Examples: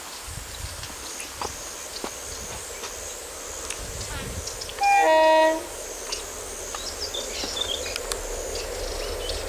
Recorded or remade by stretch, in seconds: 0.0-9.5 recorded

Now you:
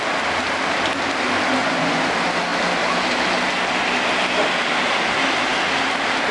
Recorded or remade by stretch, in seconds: 0.0-1.6 recorded; 1.6-2.1 remade; 2.1-6.3 recorded